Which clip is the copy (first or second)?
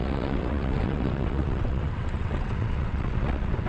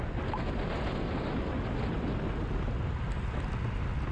first